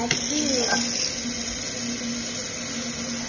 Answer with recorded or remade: recorded